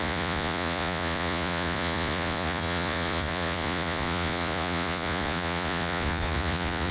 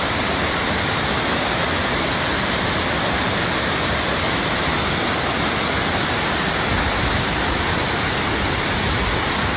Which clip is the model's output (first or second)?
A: first